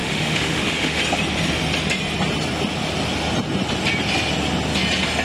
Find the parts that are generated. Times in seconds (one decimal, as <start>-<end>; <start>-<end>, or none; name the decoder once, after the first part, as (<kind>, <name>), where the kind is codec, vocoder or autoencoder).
0.0-1.0 (autoencoder, DAC-VAE)